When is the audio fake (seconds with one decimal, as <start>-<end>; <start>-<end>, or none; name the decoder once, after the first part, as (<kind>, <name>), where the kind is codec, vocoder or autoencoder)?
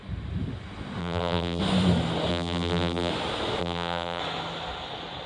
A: 1.0-1.6 (vocoder, BigVGAN v2); 2.3-3.1; 3.6-4.2